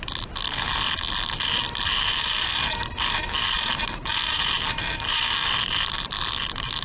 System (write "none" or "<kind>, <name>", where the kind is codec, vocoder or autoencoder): none